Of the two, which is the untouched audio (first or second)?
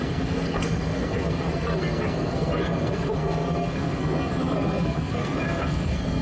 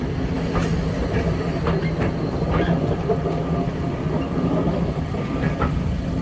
second